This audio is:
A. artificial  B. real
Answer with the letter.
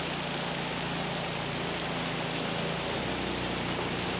B